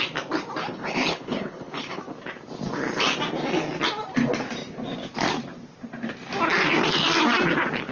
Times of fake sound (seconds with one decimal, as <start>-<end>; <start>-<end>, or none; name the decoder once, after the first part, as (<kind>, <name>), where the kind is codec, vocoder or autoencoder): 0.6-2.0 (codec, HILCodec)